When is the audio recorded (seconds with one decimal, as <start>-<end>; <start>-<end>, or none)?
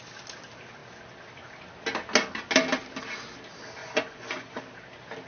0.0-3.8; 4.6-5.3